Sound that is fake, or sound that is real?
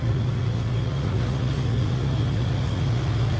fake